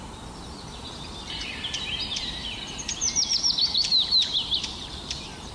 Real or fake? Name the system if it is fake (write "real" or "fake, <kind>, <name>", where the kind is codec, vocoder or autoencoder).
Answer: fake, vocoder, BigVGAN v2